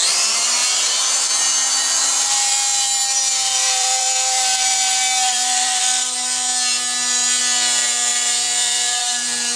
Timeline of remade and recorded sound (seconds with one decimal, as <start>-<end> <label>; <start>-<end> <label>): 0.0-0.6 recorded; 0.6-5.8 remade; 5.8-8.1 recorded; 8.1-9.6 remade